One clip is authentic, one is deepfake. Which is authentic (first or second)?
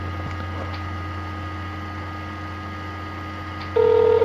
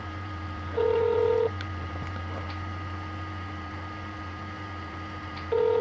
first